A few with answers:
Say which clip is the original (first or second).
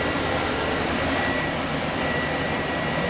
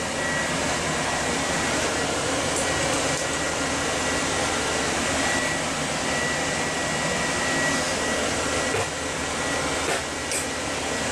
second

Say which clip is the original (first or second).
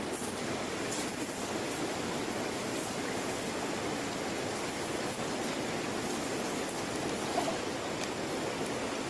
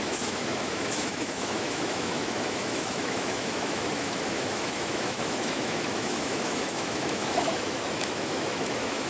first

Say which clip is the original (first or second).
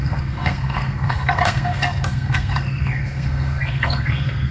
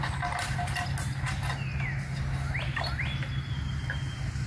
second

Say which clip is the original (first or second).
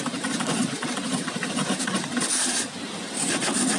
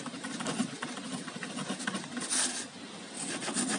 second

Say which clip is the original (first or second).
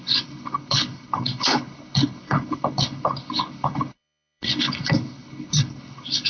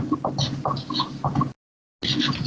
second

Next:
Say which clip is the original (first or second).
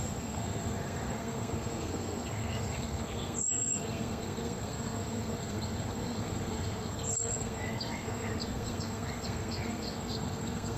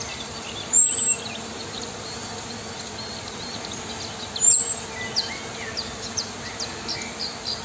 second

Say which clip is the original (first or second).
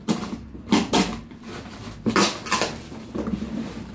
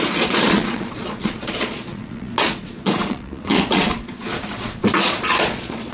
first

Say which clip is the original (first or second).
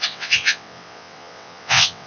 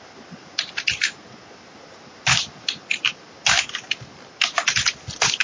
second